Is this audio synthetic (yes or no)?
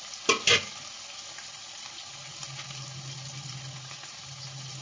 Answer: no